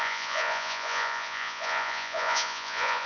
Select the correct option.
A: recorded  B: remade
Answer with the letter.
B